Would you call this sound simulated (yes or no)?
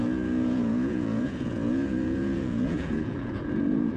yes